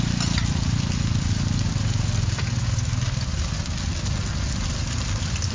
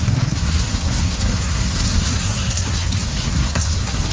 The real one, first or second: first